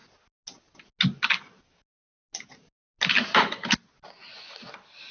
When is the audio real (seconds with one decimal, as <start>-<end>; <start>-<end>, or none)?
0.0-5.1